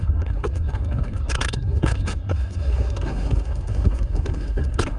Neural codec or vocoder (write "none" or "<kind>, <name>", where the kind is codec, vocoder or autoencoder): codec, SNAC